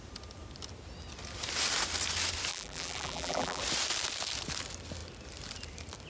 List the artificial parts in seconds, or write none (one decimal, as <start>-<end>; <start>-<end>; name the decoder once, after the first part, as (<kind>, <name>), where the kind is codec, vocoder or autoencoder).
2.5-3.6 (vocoder, BigVGAN v2)